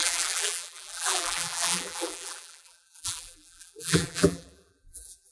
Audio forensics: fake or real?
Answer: fake